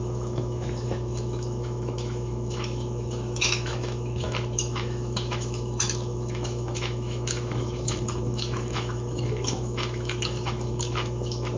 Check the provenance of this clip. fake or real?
fake